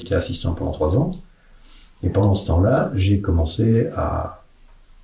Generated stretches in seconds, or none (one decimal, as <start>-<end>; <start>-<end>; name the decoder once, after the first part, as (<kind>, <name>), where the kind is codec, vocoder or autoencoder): 1.8-4.4 (vocoder, BigVGAN v2)